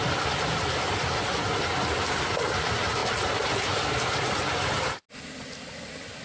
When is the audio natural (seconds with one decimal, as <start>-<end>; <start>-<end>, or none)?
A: 0.0-6.2